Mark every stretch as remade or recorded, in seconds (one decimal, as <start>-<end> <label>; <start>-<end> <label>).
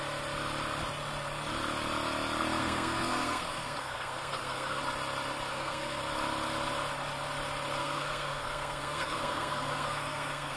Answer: 0.0-2.6 recorded; 2.6-4.8 remade; 4.8-5.5 recorded; 5.5-6.0 remade; 6.0-7.8 recorded; 7.8-10.6 remade